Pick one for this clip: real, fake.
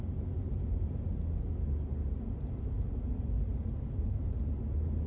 real